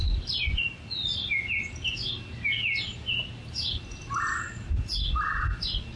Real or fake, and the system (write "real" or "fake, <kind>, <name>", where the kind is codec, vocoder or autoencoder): real